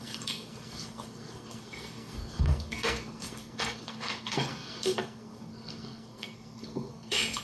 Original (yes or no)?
no